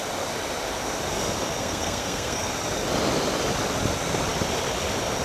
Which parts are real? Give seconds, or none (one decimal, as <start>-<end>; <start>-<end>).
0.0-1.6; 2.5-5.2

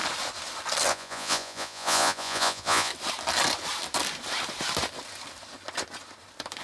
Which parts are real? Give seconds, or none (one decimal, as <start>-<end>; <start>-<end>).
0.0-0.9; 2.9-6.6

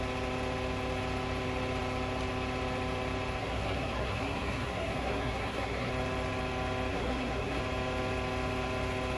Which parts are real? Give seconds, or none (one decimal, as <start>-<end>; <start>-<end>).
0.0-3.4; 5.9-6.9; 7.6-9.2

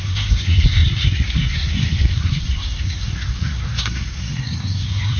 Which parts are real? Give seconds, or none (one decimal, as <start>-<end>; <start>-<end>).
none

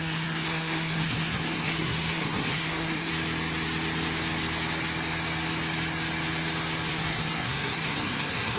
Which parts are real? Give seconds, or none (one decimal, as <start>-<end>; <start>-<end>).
3.1-6.9

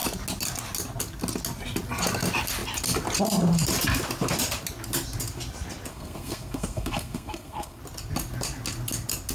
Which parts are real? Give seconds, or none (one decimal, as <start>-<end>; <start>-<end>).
0.0-5.9; 7.8-9.3

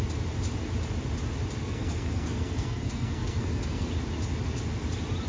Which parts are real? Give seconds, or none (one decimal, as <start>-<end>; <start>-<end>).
0.0-1.6; 3.9-5.3

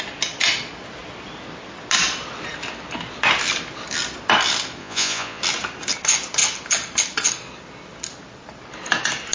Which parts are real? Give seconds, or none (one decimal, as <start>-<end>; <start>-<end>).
0.0-4.8; 5.4-9.3